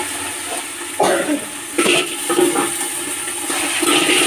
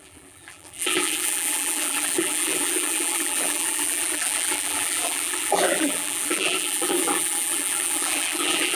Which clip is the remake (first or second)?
second